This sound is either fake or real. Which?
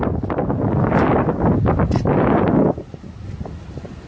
real